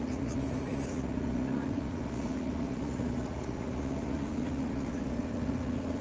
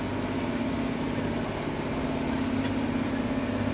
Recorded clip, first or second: second